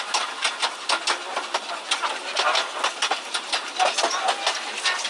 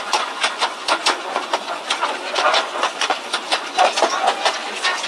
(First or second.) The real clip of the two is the first